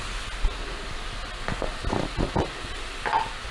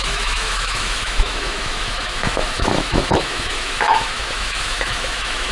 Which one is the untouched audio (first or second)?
first